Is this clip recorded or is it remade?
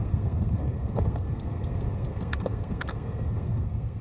remade